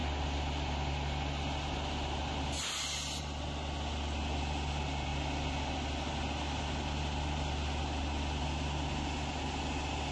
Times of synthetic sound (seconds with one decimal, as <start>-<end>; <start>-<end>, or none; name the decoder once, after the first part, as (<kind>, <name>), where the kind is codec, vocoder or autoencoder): none